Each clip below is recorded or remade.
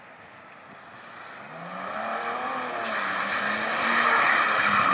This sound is recorded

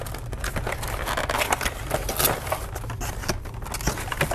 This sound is recorded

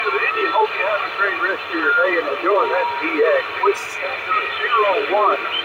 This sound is remade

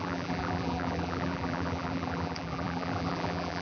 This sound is remade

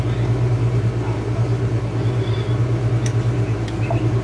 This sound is recorded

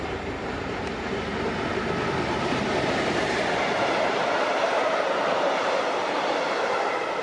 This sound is remade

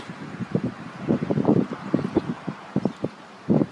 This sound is remade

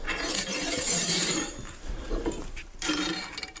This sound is remade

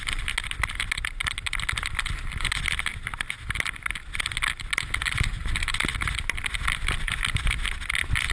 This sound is recorded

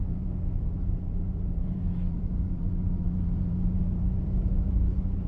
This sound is remade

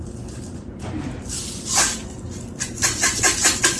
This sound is recorded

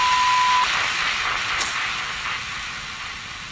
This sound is recorded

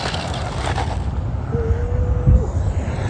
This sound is recorded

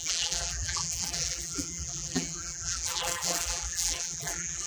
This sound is remade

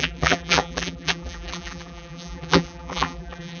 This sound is remade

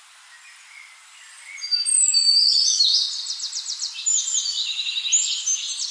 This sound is recorded